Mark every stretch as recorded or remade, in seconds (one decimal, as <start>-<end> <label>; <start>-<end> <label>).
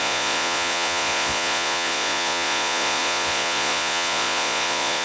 0.0-5.0 remade